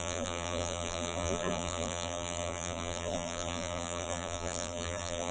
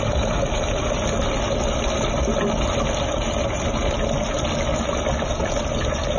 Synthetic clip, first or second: first